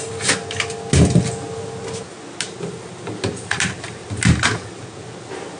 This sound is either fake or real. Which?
real